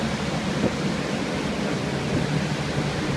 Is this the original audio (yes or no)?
yes